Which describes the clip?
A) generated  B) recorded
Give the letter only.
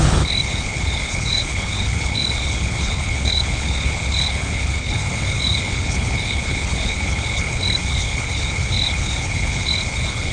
A